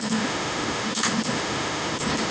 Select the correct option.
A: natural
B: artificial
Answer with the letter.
B